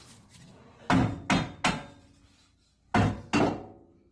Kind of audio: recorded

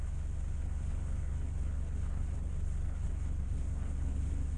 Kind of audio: remade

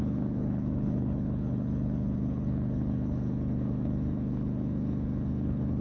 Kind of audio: remade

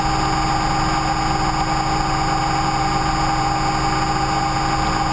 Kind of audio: recorded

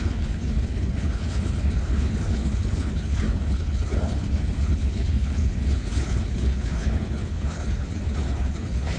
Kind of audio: remade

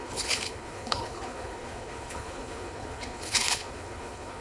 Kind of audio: remade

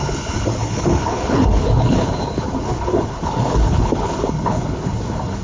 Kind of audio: remade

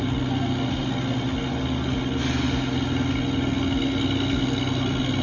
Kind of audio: recorded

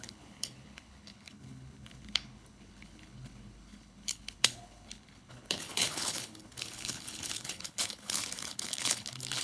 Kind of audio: remade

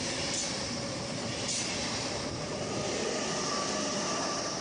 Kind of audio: recorded